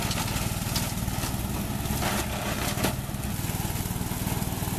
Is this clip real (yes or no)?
yes